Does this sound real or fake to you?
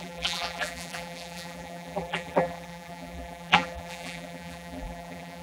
fake